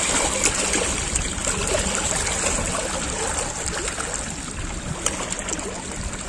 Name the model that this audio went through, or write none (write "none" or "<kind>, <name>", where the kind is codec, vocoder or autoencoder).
none